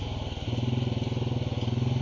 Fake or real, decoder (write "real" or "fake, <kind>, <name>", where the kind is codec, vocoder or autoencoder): real